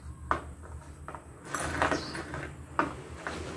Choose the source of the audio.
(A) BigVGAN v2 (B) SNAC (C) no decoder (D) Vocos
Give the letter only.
C